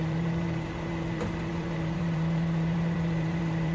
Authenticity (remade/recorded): remade